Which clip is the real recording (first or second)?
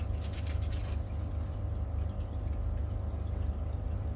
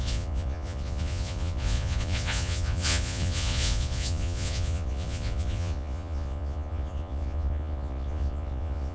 first